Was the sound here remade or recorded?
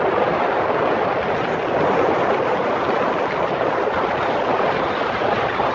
remade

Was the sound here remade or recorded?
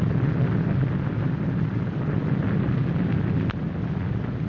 recorded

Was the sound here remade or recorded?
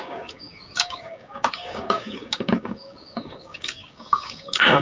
remade